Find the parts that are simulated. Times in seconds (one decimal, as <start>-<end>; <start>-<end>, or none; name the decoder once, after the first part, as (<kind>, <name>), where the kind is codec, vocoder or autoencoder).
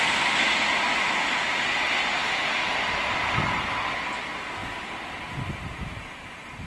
none